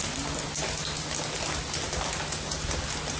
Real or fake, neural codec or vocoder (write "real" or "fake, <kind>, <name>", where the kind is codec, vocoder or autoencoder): real